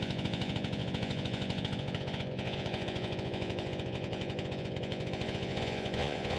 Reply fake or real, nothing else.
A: fake